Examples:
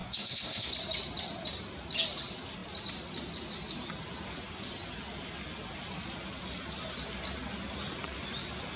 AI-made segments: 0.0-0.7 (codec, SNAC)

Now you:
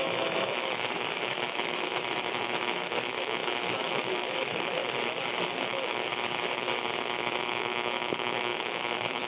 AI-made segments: 0.0-4.8 (autoencoder, DAC-VAE); 5.6-6.1; 7.4-9.3

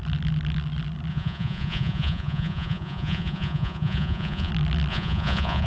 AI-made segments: 1.1-4.5 (vocoder, Vocos); 4.9-5.7

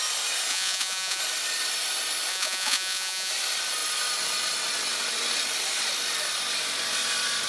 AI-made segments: 0.5-1.2 (vocoder, Vocos); 2.3-3.3